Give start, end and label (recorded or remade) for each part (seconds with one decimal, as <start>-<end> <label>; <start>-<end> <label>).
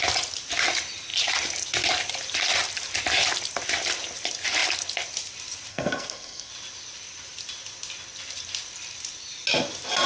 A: 0.0-5.7 recorded; 5.7-6.5 remade; 6.5-10.1 recorded